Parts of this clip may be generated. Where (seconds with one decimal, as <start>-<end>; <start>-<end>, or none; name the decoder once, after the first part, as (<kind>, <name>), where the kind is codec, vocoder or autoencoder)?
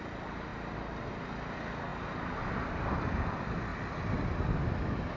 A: none